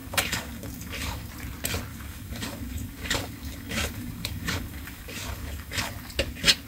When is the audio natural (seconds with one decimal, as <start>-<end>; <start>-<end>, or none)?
1.3-1.9; 5.9-6.7